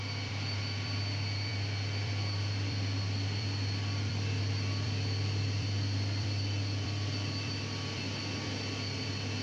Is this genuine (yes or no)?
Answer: no